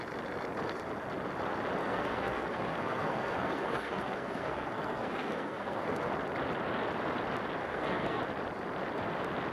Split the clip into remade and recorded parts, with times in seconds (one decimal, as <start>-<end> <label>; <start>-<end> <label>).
0.0-1.8 recorded; 1.8-6.1 remade; 6.1-7.6 recorded; 7.6-8.2 remade; 8.2-9.5 recorded